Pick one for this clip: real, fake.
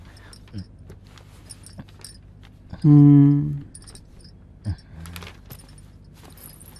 real